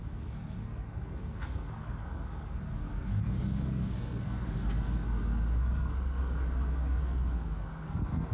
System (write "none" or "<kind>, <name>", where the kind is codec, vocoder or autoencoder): codec, SNAC